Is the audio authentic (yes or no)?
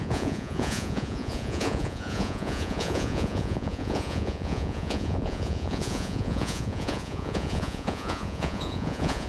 no